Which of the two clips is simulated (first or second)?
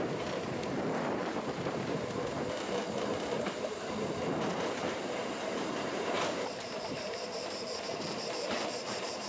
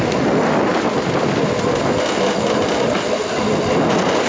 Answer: first